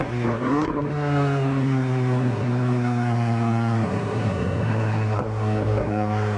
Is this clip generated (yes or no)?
yes